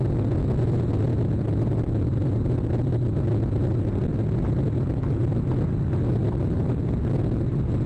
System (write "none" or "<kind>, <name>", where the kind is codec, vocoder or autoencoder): none